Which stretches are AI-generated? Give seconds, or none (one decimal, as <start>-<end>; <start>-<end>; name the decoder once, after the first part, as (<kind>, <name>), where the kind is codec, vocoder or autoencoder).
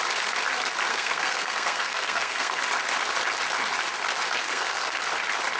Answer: 0.9-2.6 (codec, SNAC); 4.4-5.0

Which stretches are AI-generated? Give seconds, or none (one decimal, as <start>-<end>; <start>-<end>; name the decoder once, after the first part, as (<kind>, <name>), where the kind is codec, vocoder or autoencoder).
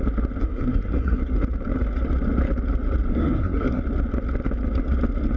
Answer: 0.4-1.2 (codec, SNAC); 3.1-3.8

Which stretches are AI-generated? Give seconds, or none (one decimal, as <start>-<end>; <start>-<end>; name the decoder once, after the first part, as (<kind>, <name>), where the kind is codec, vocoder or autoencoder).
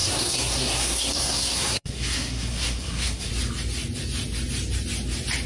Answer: 0.0-3.3 (codec, SNAC)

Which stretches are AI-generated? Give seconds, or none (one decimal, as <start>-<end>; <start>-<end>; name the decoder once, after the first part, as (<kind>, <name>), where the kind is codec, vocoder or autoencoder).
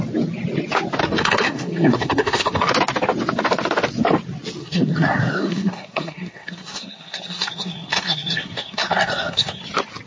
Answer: 1.0-2.7 (codec, SNAC); 4.6-9.6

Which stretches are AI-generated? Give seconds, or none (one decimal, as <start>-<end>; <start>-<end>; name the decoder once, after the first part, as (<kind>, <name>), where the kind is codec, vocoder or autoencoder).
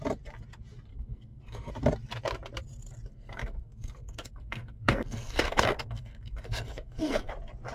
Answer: 0.9-1.7 (codec, SNAC); 3.1-7.3